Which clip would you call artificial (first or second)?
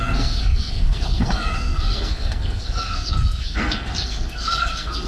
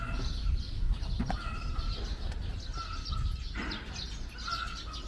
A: first